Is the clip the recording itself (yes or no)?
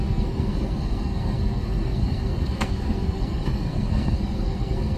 no